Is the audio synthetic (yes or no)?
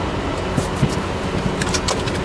yes